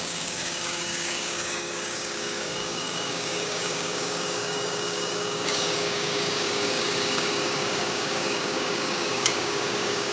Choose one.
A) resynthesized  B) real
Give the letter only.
A